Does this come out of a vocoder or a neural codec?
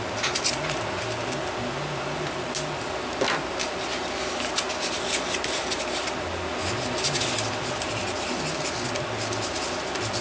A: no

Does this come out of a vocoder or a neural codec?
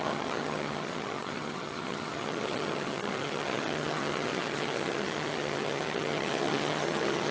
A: yes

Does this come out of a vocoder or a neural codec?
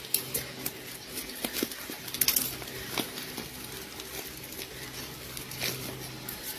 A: no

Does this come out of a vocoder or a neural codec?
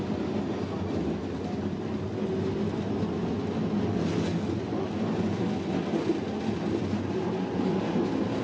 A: no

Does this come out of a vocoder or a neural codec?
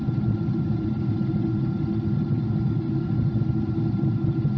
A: no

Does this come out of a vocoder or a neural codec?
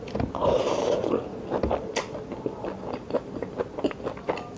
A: no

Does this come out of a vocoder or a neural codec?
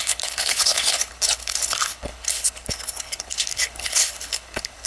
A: yes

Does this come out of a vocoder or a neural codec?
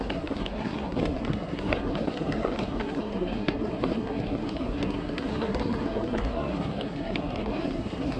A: yes